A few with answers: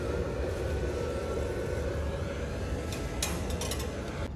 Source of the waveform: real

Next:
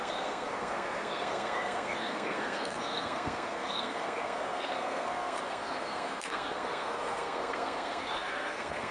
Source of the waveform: fake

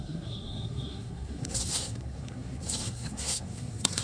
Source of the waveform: fake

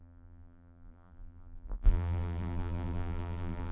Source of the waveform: fake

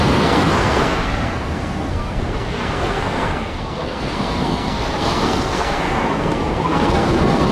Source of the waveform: fake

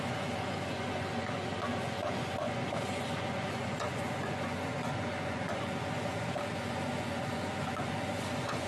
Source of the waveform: fake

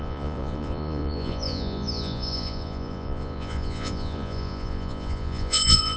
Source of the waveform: fake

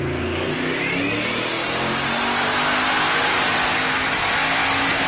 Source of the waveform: real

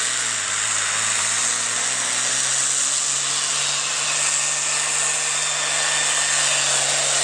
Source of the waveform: real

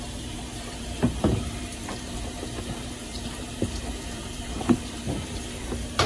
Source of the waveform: fake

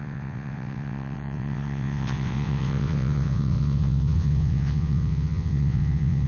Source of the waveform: fake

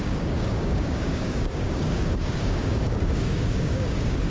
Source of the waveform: fake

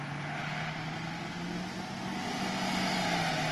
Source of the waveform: real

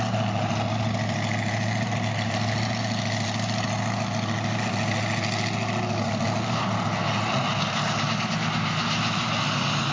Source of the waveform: real